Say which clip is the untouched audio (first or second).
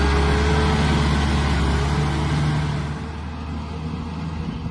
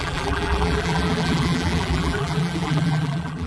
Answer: first